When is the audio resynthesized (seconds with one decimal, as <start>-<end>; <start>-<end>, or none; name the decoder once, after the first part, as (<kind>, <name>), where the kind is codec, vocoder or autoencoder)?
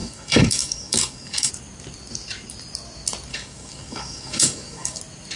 0.0-1.5 (codec, DAC); 3.3-5.0